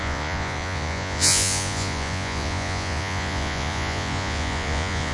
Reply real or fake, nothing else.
fake